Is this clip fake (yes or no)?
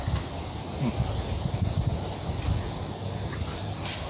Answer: no